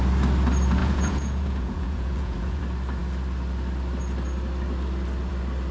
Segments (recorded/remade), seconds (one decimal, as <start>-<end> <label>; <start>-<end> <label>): 0.0-0.8 recorded; 0.8-2.6 remade; 2.6-5.7 recorded